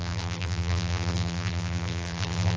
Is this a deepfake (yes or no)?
yes